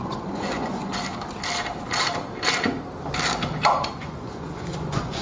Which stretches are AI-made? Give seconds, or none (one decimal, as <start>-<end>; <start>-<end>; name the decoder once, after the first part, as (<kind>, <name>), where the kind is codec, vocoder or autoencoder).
0.0-0.9 (vocoder, Vocos); 4.0-5.2